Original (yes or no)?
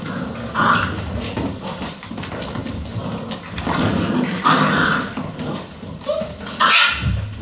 yes